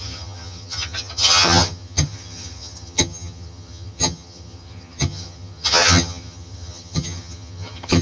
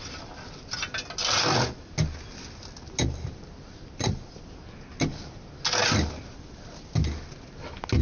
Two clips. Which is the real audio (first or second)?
second